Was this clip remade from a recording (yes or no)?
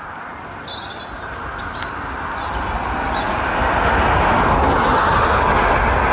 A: no